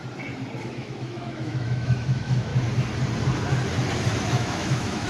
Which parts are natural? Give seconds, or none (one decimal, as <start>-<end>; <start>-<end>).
0.0-0.6; 2.5-4.3

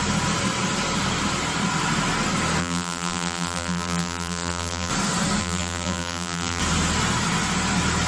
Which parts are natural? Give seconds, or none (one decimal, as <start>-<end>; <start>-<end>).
0.0-2.6; 4.9-5.4; 6.6-8.1